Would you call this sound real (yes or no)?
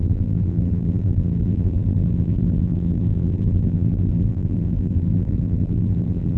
no